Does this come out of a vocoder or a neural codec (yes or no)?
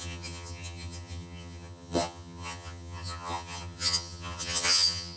yes